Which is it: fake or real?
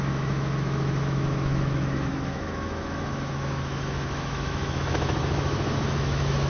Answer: fake